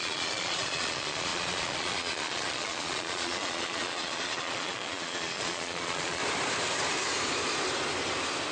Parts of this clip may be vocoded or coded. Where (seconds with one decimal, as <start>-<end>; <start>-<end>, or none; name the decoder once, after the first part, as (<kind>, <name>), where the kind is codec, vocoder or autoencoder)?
0.0-6.2 (vocoder, Vocos)